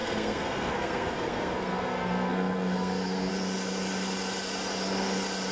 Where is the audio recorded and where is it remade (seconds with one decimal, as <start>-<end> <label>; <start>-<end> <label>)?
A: 0.0-3.3 remade; 3.3-5.5 recorded